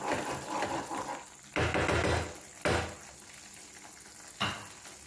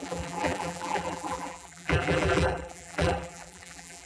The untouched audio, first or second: first